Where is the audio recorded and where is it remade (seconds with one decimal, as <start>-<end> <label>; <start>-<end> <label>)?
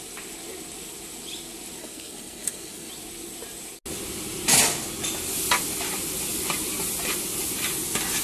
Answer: 0.0-1.8 recorded; 1.8-2.9 remade; 2.9-8.2 recorded